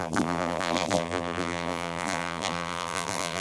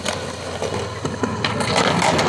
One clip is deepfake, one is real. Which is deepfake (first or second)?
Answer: first